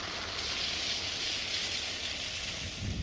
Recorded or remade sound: recorded